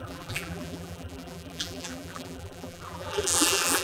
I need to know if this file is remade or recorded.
remade